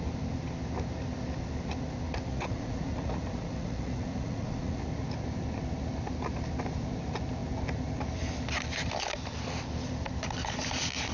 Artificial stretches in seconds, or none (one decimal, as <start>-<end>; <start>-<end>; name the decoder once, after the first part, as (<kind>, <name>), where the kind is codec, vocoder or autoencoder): 2.3-4.8 (vocoder, Vocos)